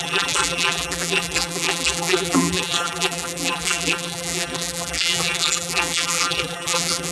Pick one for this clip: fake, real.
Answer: fake